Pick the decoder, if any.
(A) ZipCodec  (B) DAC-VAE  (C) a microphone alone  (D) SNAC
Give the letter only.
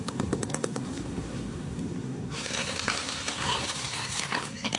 D